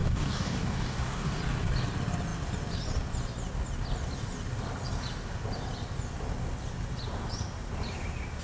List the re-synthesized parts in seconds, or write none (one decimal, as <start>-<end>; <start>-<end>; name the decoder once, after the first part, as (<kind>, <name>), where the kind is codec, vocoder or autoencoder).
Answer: 0.0-1.4 (codec, DAC)